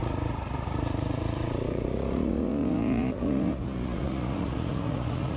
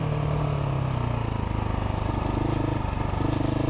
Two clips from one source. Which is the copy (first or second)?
first